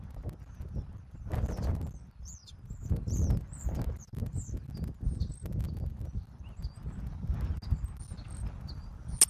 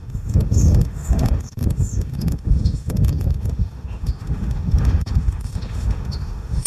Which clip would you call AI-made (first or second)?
second